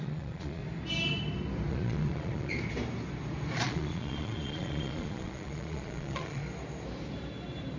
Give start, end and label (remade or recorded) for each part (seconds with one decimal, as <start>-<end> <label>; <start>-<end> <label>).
0.0-0.6 remade; 0.6-1.7 recorded; 1.7-2.5 remade; 2.5-3.6 recorded; 3.6-6.4 remade; 6.4-7.8 recorded